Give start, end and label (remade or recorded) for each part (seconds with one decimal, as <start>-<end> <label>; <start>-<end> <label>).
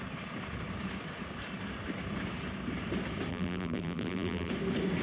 0.0-3.3 recorded; 3.3-4.5 remade; 4.5-5.0 recorded